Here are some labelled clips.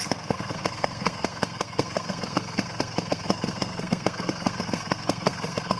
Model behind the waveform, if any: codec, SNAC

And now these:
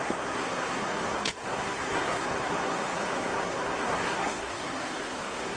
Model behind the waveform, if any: codec, SNAC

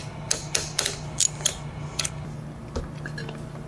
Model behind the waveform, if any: none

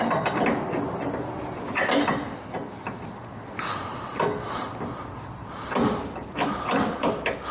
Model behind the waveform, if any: none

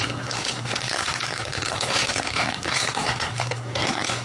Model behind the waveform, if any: codec, SNAC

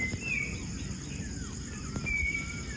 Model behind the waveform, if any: none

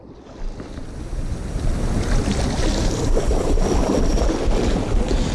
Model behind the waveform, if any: none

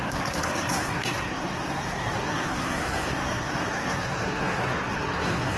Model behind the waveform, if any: codec, SNAC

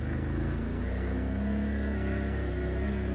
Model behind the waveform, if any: codec, SNAC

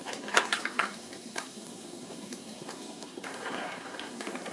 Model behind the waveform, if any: codec, SNAC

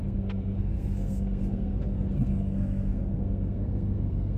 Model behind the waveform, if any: codec, SNAC